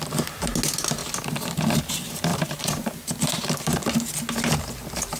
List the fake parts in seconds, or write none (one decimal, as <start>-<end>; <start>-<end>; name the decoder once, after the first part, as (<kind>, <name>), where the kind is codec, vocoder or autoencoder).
2.3-3.8 (vocoder, BigVGAN v2)

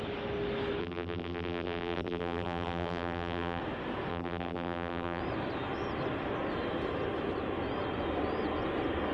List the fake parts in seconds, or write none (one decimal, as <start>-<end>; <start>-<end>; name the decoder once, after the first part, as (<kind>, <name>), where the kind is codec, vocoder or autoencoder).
0.8-3.6 (vocoder, BigVGAN v2); 4.1-5.2

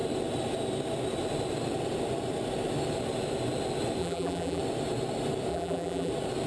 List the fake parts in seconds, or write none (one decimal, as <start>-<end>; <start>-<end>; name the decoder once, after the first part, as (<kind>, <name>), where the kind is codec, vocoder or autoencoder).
4.0-4.6 (vocoder, BigVGAN v2); 5.5-6.1

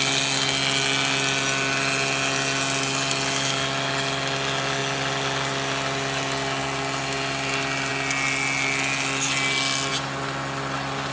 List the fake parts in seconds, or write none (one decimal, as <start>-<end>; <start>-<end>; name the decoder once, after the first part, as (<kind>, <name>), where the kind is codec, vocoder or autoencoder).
none

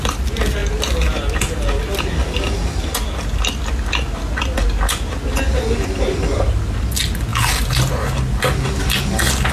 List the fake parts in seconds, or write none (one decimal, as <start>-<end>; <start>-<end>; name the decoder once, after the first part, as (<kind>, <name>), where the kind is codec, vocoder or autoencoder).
none